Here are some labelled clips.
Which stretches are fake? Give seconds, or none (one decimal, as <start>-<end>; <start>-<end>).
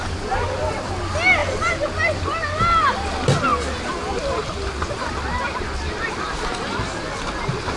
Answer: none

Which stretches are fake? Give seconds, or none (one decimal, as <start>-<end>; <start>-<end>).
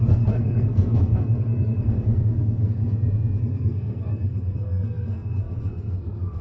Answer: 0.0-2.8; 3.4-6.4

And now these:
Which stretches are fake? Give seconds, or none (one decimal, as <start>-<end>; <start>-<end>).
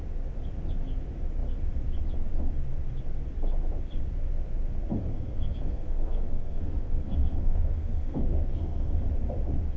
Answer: 5.0-9.0